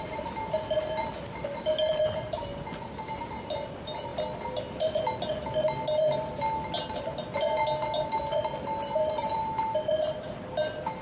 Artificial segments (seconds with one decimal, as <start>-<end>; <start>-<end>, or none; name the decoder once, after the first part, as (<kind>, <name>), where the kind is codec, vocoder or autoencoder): none